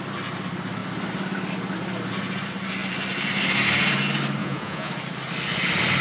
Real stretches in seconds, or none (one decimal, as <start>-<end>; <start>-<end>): 0.0-4.4; 4.9-6.0